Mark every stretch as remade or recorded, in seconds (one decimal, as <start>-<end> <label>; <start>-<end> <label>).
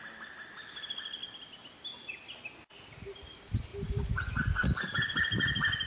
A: 0.0-1.2 recorded; 1.2-1.7 remade; 1.7-3.7 recorded; 3.7-4.8 remade; 4.8-5.9 recorded